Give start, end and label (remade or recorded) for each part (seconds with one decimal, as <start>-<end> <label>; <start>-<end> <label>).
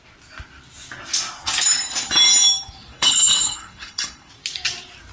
0.0-2.9 recorded; 2.9-4.3 remade; 4.3-5.1 recorded